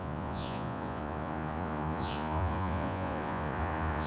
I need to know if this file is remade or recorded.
remade